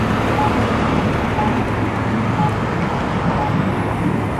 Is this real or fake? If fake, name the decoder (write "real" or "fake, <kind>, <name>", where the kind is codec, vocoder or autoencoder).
real